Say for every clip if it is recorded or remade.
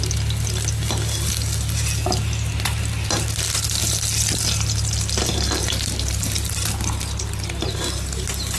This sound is recorded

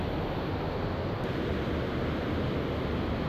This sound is recorded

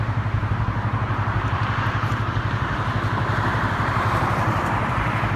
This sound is remade